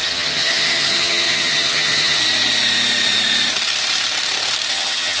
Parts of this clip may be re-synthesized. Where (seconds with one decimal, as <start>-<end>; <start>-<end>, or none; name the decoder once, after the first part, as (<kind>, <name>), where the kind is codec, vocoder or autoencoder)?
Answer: 0.0-2.2 (vocoder, HiFi-GAN); 4.7-5.2